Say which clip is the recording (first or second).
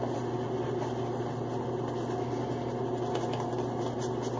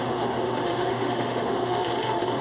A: first